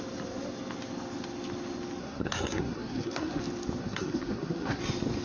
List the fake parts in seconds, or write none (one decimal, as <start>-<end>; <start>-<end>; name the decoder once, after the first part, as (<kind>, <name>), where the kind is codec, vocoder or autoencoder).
2.0-3.4 (codec, SNAC); 3.8-4.8